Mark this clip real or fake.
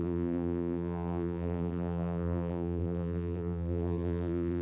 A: fake